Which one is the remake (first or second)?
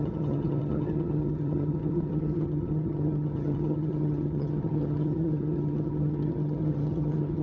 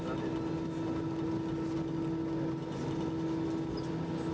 first